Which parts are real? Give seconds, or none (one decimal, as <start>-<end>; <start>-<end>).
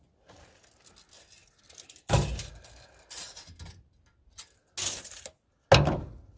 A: 0.0-6.4